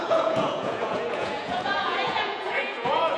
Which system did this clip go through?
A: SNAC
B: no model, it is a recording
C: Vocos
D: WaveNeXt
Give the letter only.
C